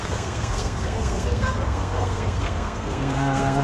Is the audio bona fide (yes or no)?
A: no